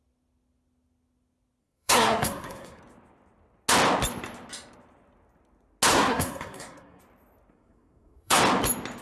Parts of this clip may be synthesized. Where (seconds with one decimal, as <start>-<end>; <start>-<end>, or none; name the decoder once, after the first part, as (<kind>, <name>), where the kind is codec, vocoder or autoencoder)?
1.6-2.8 (codec, SNAC); 5.9-7.0; 7.5-8.4